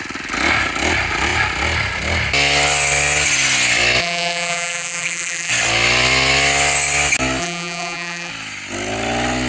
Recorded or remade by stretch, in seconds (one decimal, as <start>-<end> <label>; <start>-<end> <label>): 0.0-4.0 recorded; 4.0-5.5 remade; 5.5-7.4 recorded; 7.4-8.3 remade; 8.3-9.5 recorded